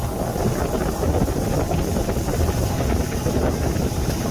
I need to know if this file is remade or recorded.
recorded